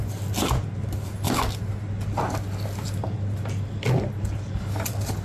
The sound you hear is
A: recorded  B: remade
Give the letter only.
A